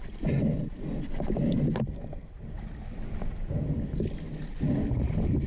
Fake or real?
real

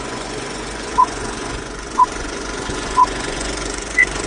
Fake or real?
fake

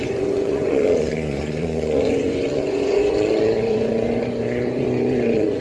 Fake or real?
fake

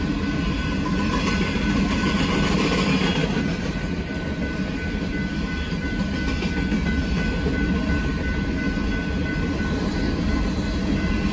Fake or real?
real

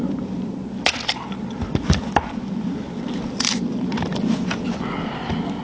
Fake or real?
real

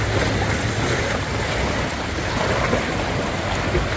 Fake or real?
real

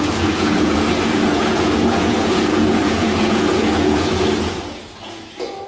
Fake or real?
fake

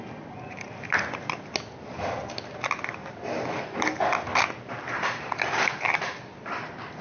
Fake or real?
real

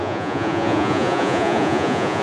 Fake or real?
fake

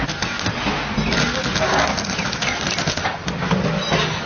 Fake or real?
real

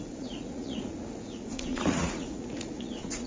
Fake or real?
fake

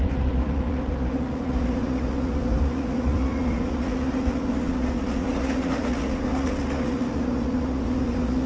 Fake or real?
fake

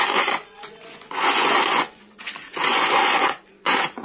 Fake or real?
fake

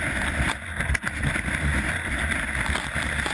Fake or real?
real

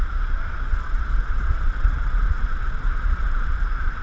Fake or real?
fake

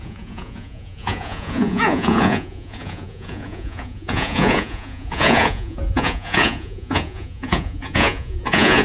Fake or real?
fake